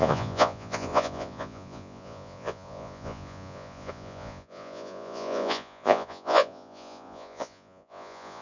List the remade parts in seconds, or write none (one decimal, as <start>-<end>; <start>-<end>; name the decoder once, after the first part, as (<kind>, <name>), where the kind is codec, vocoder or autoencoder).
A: 0.0-8.4 (vocoder, Vocos)